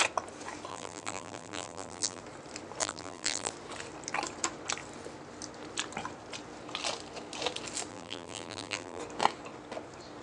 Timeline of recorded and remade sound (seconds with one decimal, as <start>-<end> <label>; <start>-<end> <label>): 0.0-0.7 recorded; 0.7-2.2 remade; 2.2-2.8 recorded; 2.8-3.5 remade; 3.5-7.9 recorded; 7.9-9.0 remade; 9.0-10.2 recorded